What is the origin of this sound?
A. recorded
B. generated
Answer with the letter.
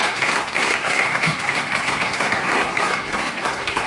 B